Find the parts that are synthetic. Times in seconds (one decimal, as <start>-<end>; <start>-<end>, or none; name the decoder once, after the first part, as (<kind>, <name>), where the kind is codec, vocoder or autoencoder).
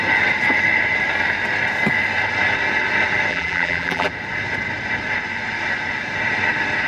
3.3-4.1 (vocoder, BigVGAN v2)